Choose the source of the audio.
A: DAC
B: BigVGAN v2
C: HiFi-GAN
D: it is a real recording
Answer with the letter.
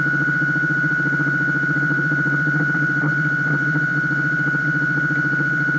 D